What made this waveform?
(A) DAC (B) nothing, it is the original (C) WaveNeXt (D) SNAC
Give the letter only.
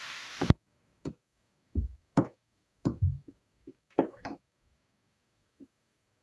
A